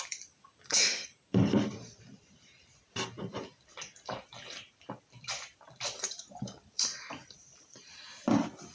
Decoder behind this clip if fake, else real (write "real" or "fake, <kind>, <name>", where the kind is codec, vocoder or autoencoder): fake, vocoder, BigVGAN v2